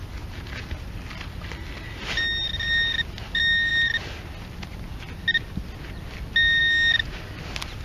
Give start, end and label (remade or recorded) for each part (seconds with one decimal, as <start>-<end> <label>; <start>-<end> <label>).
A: 0.0-7.8 recorded